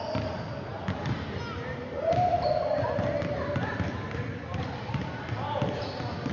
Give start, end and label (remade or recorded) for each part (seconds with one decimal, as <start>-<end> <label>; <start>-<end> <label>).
0.0-6.3 recorded